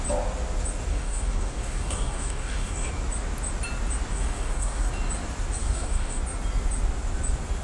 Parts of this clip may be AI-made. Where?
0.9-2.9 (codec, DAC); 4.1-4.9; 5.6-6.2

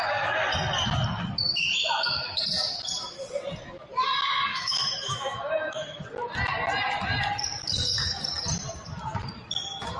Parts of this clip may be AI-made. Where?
1.4-2.4 (autoencoder, DAC-VAE); 4.5-6.0

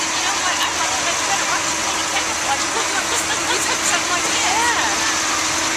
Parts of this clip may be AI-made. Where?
none

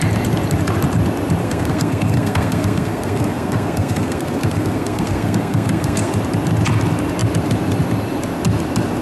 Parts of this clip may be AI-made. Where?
1.4-6.1 (codec, SNAC)

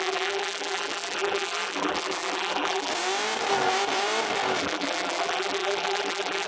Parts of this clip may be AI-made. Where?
0.0-2.9 (vocoder, BigVGAN v2); 4.6-6.5

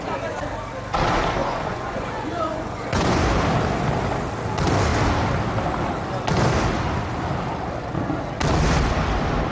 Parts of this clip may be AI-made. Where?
1.4-3.2 (vocoder, Vocos)

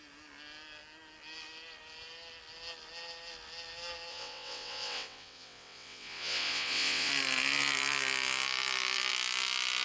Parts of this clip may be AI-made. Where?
4.1-7.1 (vocoder, WaveNeXt)

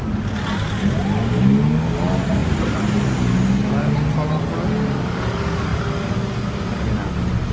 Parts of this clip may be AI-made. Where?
none